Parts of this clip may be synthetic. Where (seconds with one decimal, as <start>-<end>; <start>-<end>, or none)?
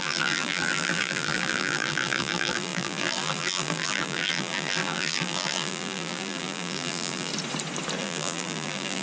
0.0-7.3; 8.0-9.0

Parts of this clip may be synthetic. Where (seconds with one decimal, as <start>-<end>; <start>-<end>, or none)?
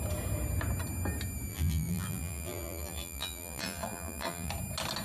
1.5-4.5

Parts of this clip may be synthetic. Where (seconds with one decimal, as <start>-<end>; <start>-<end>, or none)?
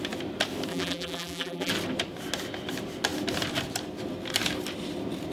0.7-1.7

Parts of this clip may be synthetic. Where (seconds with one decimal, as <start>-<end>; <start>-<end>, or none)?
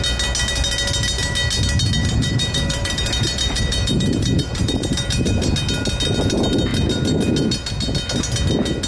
2.0-5.5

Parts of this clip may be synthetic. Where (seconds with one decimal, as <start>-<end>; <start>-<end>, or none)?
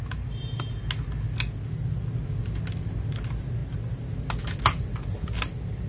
none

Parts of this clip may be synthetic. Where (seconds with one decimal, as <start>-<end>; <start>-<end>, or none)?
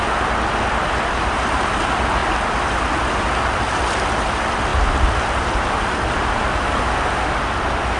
none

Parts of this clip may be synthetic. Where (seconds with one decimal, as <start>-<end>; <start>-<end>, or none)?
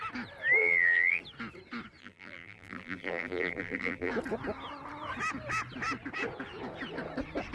0.6-1.2; 2.0-4.1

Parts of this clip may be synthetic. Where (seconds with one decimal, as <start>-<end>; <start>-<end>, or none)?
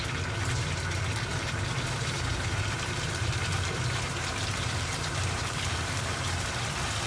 1.3-5.6